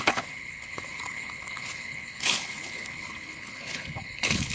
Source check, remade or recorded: remade